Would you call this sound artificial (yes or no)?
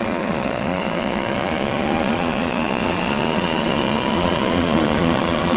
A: yes